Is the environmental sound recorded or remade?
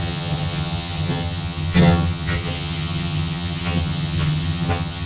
remade